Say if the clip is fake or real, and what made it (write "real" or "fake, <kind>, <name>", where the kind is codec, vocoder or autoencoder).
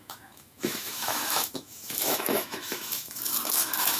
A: fake, autoencoder, DAC-VAE